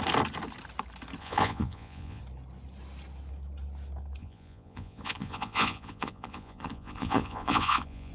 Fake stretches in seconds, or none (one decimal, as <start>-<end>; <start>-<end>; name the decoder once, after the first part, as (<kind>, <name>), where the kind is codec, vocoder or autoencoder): 1.2-2.2 (vocoder, Vocos); 4.2-8.1